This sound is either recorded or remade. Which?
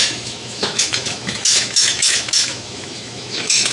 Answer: remade